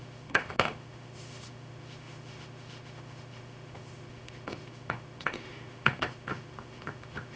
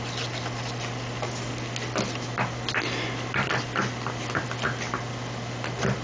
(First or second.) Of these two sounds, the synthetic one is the first